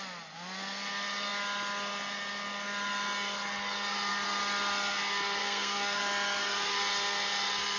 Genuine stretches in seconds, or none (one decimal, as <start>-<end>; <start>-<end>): 0.0-5.4; 6.0-7.8